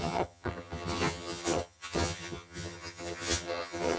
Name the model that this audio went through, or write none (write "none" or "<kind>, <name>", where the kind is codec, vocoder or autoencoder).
vocoder, HiFi-GAN